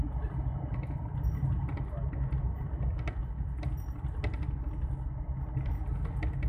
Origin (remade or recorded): recorded